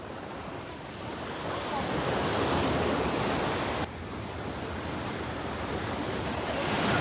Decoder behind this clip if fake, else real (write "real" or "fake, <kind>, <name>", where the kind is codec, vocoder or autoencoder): real